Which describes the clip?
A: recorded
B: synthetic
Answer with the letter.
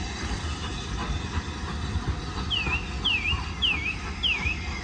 A